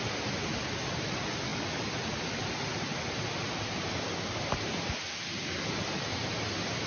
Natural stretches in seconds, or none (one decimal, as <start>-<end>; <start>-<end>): 0.0-6.9